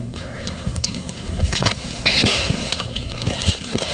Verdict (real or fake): fake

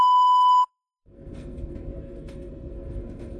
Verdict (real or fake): fake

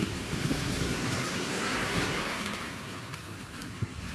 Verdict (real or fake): fake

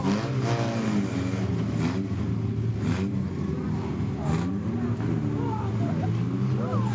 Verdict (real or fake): real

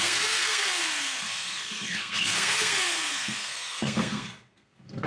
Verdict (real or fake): fake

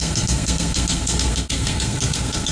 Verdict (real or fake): fake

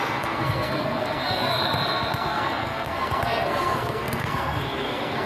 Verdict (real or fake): fake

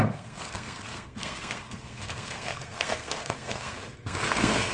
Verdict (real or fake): fake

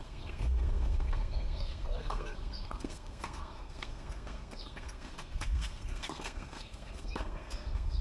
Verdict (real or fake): fake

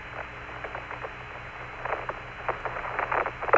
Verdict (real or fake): real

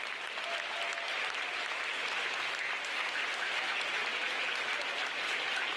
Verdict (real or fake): real